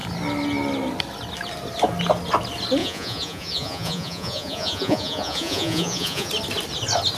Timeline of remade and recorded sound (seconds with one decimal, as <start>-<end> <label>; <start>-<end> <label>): 0.0-2.8 recorded; 2.8-6.3 remade; 6.3-7.2 recorded